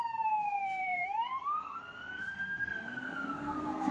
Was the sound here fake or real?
fake